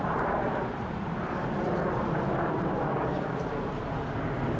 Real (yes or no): yes